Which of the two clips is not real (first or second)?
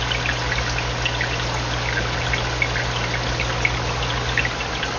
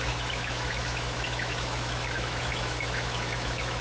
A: second